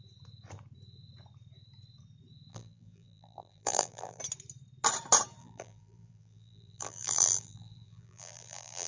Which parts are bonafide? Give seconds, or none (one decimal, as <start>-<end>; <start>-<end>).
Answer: 0.0-2.5; 4.2-5.4